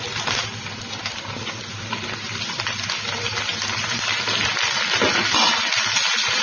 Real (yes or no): yes